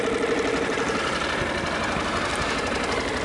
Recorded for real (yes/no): yes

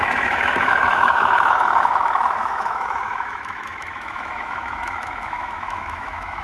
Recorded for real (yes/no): no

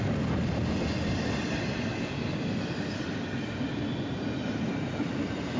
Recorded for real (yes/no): yes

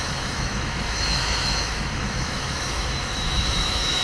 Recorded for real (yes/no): no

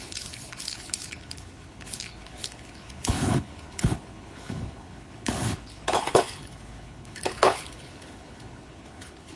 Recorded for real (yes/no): no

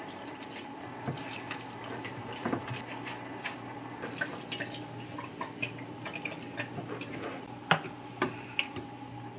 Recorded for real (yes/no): yes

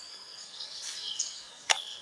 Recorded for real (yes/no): no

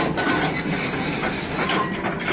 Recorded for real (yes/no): no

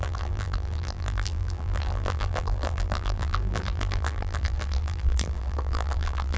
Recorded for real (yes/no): no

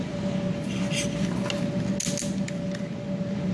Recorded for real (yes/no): yes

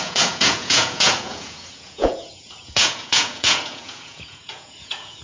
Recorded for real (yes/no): no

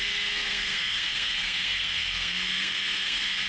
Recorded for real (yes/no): no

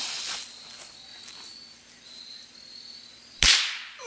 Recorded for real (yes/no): yes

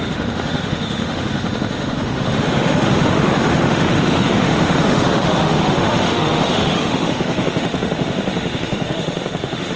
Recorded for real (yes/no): no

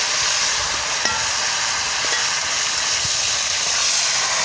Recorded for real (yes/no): yes